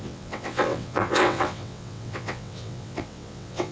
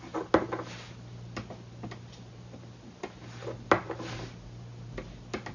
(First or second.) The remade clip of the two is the first